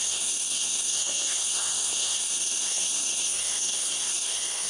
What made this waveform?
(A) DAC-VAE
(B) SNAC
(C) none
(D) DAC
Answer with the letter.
B